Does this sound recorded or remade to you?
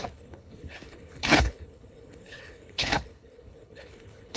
remade